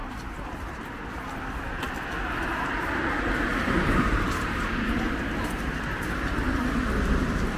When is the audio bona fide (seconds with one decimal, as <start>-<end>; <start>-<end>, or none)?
0.8-3.5; 5.5-7.6